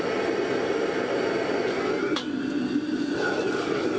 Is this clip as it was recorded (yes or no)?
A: yes